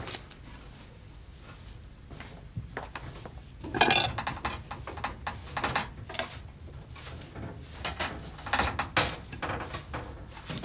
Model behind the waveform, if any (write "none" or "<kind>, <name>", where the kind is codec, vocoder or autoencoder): none